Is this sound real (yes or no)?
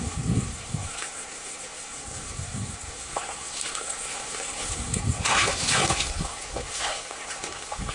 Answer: no